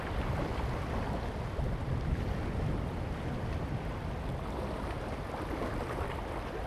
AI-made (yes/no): no